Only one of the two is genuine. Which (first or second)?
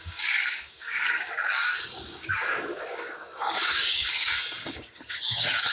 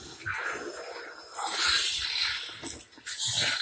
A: second